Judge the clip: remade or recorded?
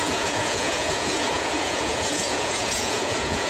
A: remade